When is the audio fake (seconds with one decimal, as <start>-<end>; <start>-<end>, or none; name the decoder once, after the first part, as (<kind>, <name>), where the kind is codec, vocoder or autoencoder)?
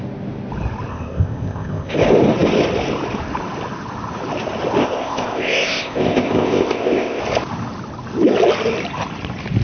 0.9-2.0 (codec, ZipCodec); 4.8-7.2